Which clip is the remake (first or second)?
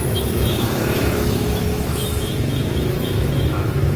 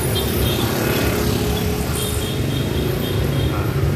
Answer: first